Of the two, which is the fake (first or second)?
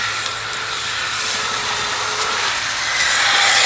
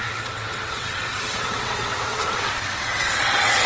second